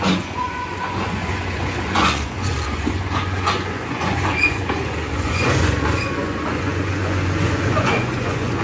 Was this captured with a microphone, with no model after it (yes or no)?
no